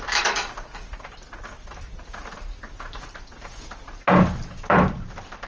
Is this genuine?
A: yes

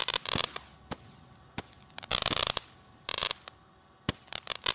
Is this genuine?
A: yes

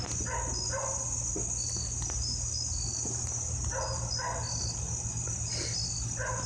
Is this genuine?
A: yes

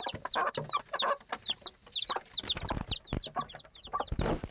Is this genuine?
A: yes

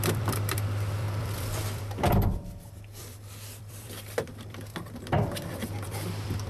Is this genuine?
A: no